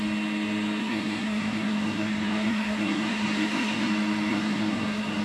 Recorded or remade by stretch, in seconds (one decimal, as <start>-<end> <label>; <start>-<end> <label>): 0.0-0.8 recorded; 0.8-3.9 remade; 3.9-4.3 recorded; 4.3-5.2 remade